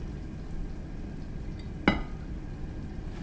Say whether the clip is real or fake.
real